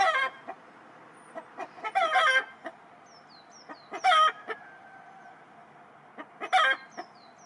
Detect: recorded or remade recorded